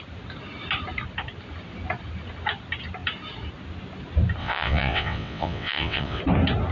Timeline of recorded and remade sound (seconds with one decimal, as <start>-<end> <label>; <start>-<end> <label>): 0.0-4.4 recorded; 4.4-6.2 remade; 6.2-6.7 recorded